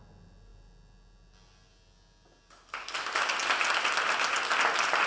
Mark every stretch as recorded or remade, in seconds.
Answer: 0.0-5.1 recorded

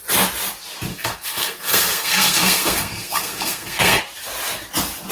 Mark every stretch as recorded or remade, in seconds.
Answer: 0.0-0.9 recorded; 0.9-4.0 remade; 4.0-5.1 recorded

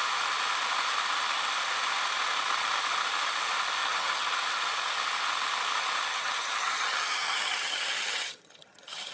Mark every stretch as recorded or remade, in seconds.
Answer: 0.0-3.8 recorded; 3.8-4.3 remade; 4.3-6.1 recorded; 6.1-9.1 remade

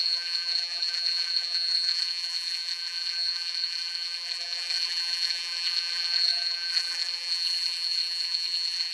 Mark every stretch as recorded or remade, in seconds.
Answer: 0.0-8.9 remade

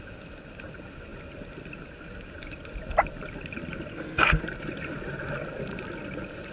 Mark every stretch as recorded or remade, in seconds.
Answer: 0.0-3.9 recorded; 3.9-4.4 remade; 4.4-6.5 recorded

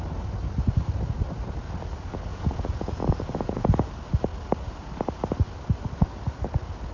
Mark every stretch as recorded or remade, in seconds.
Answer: 0.0-2.3 recorded; 2.3-3.9 remade; 3.9-6.9 recorded